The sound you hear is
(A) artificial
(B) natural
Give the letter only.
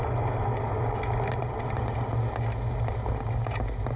B